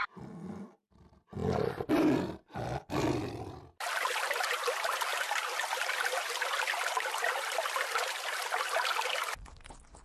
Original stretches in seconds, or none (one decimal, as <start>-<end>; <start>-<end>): 0.0-10.0